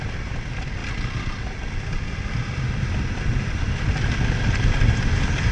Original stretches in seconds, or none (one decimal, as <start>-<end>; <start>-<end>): 0.0-5.5